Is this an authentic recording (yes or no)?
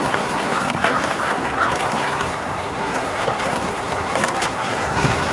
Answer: no